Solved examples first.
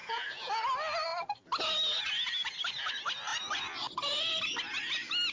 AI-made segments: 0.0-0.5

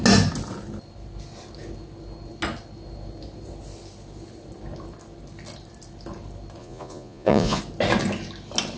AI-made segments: 6.6-7.6

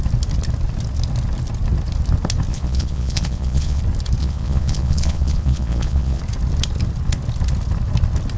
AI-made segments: 2.5-3.8; 4.2-6.2

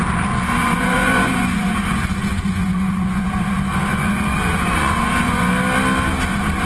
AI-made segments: 0.6-1.8; 2.3-3.5; 3.9-5.5

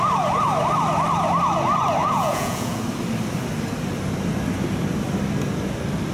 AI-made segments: 2.0-2.8

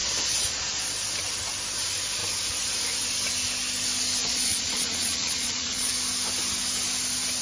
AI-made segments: 0.0-0.8; 4.2-5.9

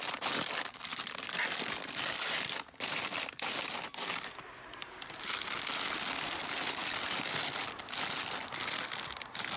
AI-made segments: none